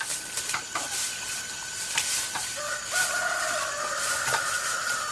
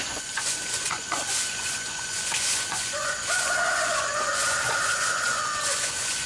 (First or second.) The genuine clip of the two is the first